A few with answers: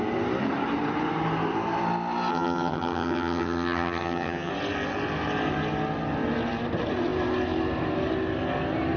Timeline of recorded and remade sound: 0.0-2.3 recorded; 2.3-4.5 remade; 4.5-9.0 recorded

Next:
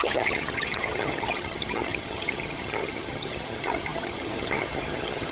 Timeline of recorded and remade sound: 0.0-5.3 remade

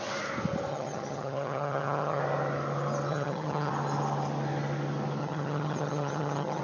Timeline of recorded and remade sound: 0.0-0.7 recorded; 0.7-2.2 remade; 2.2-3.1 recorded; 3.1-3.7 remade; 3.7-5.2 recorded; 5.2-6.6 remade

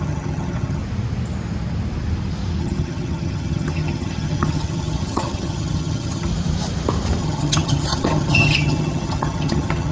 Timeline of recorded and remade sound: 0.0-0.8 remade; 0.8-2.6 recorded; 2.6-6.3 remade; 6.3-7.2 recorded; 7.2-9.9 remade

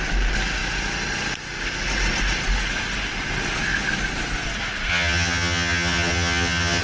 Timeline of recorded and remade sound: 0.0-4.9 recorded; 4.9-6.8 remade

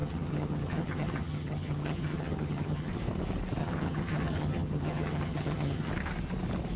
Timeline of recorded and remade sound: 0.0-2.9 remade; 2.9-3.6 recorded; 3.6-5.9 remade; 5.9-6.8 recorded

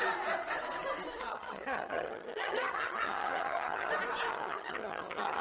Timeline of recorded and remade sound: 0.0-1.3 recorded; 1.3-3.9 remade; 3.9-4.3 recorded; 4.3-5.4 remade

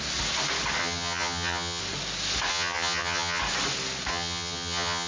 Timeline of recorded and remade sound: 0.0-0.8 recorded; 0.8-1.8 remade; 1.8-2.5 recorded; 2.5-3.4 remade; 3.4-4.1 recorded; 4.1-5.1 remade